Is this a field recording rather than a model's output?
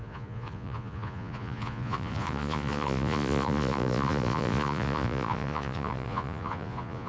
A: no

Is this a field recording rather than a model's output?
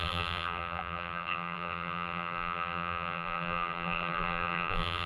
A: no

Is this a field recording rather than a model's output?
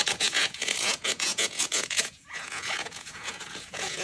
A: no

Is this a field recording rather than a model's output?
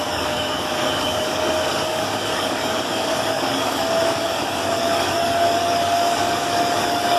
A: no